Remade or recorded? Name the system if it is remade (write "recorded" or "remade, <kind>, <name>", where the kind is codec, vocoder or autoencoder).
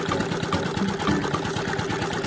recorded